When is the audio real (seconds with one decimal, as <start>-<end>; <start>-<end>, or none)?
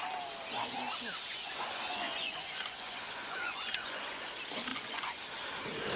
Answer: 0.0-1.3; 4.3-4.7; 5.2-6.0